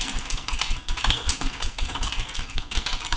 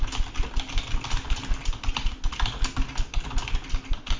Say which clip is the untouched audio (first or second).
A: second